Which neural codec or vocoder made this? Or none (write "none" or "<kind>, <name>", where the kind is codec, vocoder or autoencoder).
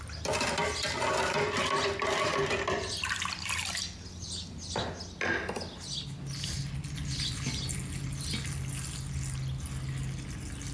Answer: none